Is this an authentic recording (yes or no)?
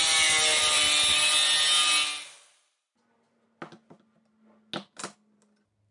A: yes